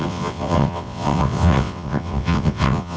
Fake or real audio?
fake